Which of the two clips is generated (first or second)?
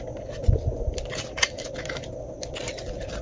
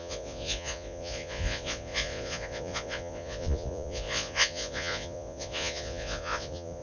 second